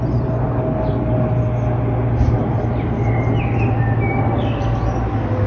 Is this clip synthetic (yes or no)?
no